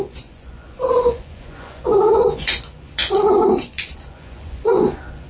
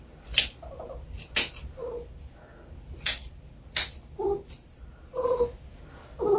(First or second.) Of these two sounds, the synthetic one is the first